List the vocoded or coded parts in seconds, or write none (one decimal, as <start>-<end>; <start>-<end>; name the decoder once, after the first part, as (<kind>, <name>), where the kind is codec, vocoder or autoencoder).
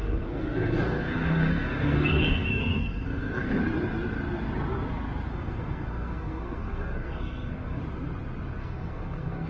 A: 0.0-3.6 (codec, SNAC); 5.3-7.8; 8.6-9.5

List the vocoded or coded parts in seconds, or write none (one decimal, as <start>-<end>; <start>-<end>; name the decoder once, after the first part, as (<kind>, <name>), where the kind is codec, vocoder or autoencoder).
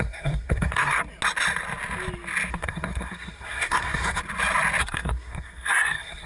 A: 0.0-1.0 (codec, SNAC); 2.5-4.2; 4.8-6.3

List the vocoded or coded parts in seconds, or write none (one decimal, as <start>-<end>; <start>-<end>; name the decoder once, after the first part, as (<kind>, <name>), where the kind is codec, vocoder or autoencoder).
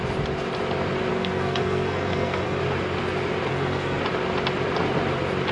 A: 1.1-2.6 (codec, SNAC); 3.5-4.0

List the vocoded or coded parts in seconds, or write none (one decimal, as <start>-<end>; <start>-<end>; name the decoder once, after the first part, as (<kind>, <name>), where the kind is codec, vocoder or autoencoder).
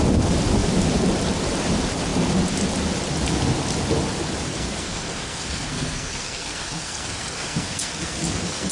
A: 4.5-8.7 (codec, SNAC)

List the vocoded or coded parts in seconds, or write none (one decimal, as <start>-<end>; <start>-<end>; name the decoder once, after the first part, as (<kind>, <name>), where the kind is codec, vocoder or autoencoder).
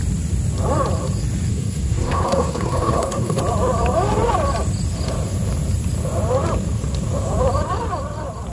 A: 1.5-3.4 (codec, SNAC)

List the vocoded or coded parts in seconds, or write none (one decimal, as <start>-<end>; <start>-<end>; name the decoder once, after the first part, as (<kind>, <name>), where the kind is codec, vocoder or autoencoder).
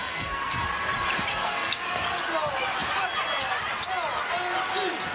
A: 0.0-0.6 (codec, SNAC); 1.3-2.2